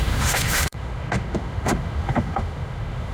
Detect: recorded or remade remade